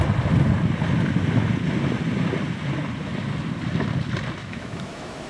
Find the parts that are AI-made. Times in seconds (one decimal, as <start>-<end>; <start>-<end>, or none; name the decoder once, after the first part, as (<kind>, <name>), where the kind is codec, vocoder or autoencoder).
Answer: 4.4-5.3 (autoencoder, DAC-VAE)